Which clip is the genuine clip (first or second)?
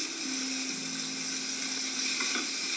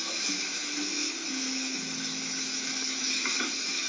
first